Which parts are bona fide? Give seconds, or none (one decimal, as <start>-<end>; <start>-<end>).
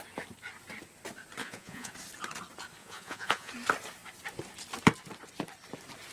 0.0-1.4; 1.9-2.8; 3.5-6.1